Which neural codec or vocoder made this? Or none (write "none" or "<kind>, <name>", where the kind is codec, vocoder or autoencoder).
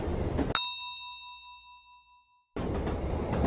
none